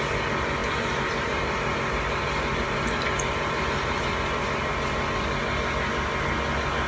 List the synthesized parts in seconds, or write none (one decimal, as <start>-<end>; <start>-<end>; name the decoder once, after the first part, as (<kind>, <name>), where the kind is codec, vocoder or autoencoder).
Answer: 0.6-4.7 (vocoder, BigVGAN v2)